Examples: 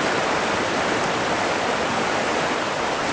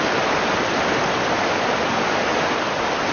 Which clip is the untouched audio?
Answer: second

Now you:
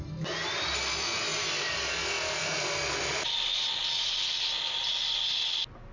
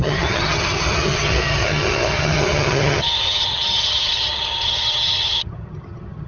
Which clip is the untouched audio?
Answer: first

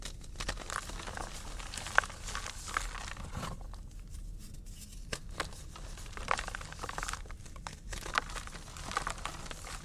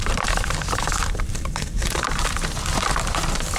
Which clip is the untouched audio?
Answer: first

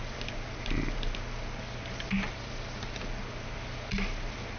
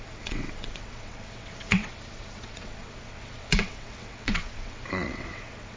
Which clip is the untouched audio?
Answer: first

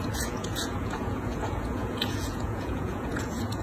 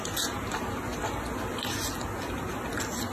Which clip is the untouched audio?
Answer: second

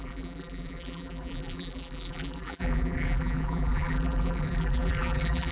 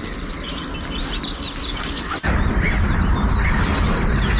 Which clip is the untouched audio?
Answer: second